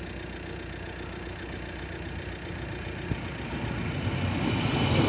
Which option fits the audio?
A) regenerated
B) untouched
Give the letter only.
B